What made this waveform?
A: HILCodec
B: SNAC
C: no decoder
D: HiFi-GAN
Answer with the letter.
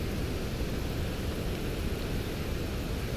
C